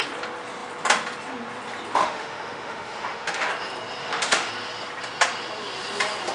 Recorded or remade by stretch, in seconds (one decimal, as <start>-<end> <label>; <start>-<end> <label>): 0.0-2.0 recorded; 2.0-3.5 remade; 3.5-4.0 recorded; 4.0-4.5 remade; 4.5-6.3 recorded